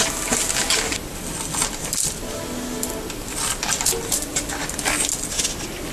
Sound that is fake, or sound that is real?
real